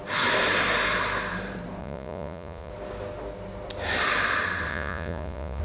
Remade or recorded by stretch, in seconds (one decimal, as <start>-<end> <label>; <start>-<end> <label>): 0.0-1.8 recorded; 1.8-2.7 remade; 2.7-4.7 recorded; 4.7-5.6 remade